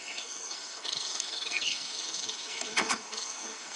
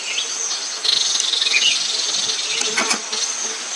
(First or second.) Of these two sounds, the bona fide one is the second